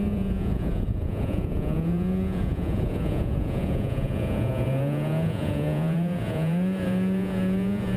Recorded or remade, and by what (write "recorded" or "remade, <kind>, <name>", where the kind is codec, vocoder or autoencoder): remade, vocoder, Vocos